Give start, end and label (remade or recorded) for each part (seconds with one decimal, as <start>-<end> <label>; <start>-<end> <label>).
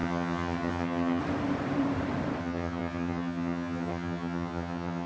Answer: 0.0-1.2 remade; 1.2-2.4 recorded; 2.4-5.1 remade